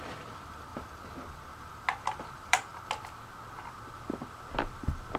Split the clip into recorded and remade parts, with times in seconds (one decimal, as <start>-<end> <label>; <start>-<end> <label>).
0.0-0.7 remade; 0.7-2.1 recorded; 2.1-2.7 remade; 2.7-3.6 recorded; 3.6-5.2 remade